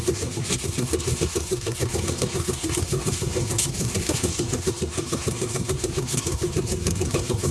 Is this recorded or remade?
remade